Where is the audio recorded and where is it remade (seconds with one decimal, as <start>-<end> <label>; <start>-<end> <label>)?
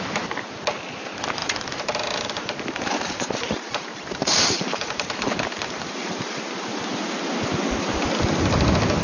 0.0-1.4 recorded; 1.4-6.4 remade; 6.4-9.0 recorded